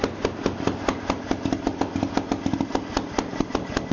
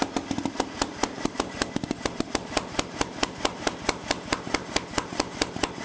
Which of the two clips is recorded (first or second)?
first